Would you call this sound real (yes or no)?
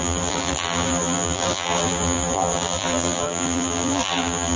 no